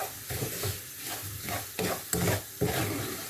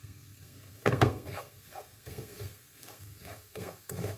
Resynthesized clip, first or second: second